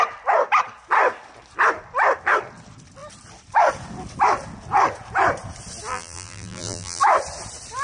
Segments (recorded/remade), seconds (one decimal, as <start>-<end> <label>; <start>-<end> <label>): 0.0-5.9 recorded; 5.9-7.0 remade; 7.0-7.8 recorded